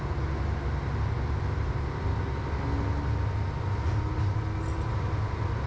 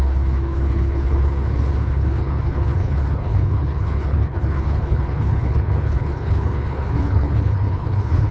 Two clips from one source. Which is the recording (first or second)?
first